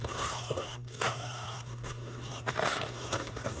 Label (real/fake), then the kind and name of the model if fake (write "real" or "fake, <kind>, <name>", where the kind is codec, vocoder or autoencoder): fake, codec, SNAC